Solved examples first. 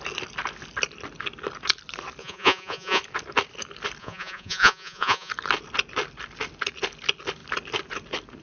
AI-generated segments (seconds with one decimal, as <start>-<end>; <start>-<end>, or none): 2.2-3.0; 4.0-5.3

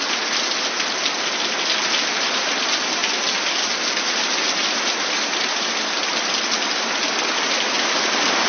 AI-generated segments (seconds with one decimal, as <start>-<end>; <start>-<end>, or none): none

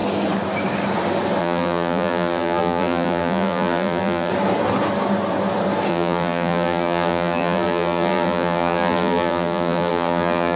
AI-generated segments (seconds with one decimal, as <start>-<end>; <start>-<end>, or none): 1.4-4.3; 5.9-10.6